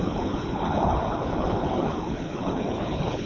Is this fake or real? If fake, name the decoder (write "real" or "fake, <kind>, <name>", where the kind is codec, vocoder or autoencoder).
fake, codec, HILCodec